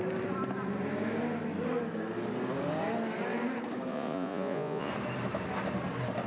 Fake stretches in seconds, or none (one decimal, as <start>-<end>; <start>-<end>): 3.9-4.9